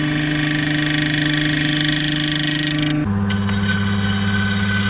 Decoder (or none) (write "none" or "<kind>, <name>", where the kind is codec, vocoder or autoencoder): none